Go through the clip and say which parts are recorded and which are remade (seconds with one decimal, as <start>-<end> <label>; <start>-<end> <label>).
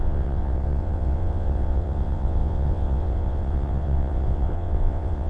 0.0-5.3 remade